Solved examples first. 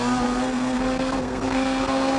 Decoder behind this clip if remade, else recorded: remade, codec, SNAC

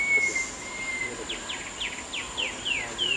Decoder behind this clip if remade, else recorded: recorded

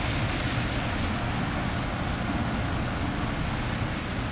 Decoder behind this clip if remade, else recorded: recorded